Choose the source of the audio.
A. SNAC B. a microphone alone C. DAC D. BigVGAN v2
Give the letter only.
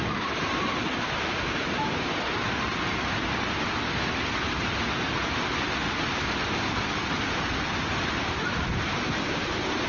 B